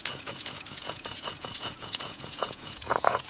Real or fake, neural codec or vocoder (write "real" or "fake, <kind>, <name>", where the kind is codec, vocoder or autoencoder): fake, vocoder, Vocos